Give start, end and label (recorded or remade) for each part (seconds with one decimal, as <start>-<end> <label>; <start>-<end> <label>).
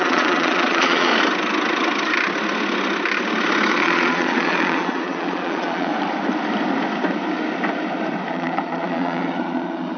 0.0-1.1 remade; 1.1-3.7 recorded; 3.7-5.9 remade; 5.9-8.3 recorded; 8.3-10.0 remade